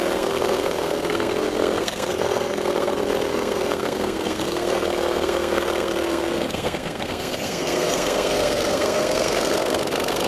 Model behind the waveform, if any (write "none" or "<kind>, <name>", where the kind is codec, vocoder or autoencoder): codec, SNAC